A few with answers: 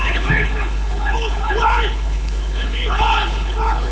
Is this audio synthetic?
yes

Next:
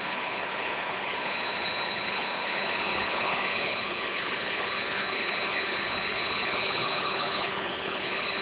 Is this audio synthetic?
yes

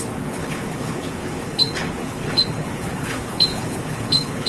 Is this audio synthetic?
yes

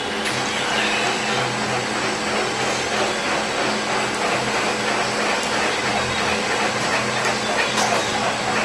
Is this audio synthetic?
no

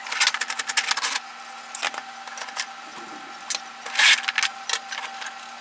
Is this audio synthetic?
no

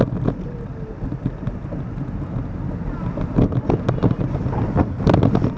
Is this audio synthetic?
no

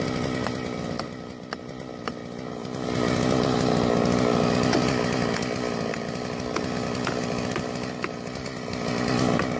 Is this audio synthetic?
no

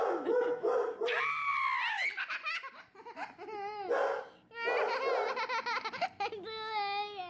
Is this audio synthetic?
no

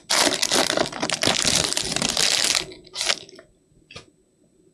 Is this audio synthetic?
no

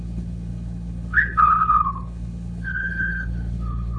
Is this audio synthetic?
yes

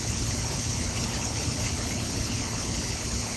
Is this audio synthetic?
yes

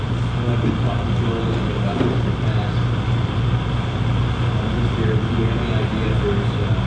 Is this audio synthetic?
no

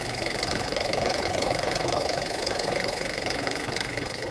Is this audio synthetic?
yes